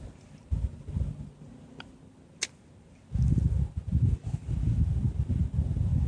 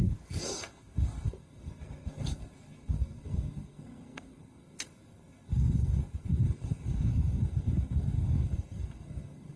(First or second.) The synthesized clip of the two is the second